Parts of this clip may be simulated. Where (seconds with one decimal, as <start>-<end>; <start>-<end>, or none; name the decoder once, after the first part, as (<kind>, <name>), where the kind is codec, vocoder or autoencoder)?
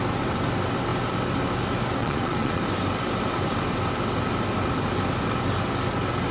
2.0-2.6 (vocoder, Vocos)